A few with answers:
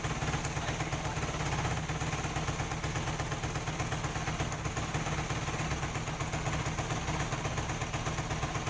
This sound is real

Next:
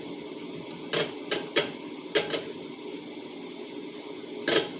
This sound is real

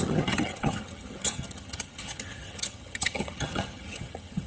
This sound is fake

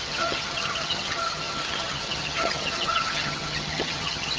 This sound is fake